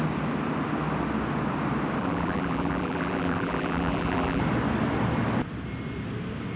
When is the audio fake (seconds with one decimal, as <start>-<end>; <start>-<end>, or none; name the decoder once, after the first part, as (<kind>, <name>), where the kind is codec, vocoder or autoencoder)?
2.0-4.4 (vocoder, BigVGAN v2)